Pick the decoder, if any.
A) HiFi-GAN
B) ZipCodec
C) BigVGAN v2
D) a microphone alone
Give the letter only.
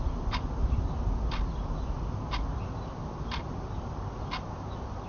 D